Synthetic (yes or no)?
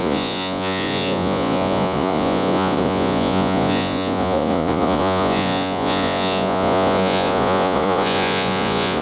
yes